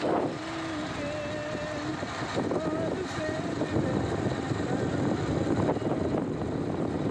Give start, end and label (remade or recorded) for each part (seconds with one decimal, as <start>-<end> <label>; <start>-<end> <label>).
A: 0.0-7.1 recorded